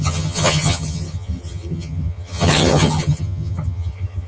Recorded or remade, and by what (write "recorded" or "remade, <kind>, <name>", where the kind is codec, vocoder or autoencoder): remade, vocoder, HiFi-GAN